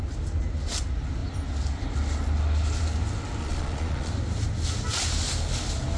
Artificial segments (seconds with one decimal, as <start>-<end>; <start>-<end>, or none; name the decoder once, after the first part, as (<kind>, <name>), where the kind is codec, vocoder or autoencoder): 3.4-4.1 (vocoder, Vocos)